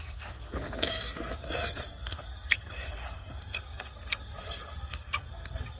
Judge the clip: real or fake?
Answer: fake